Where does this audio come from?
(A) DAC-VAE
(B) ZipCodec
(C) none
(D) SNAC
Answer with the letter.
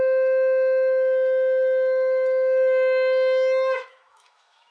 A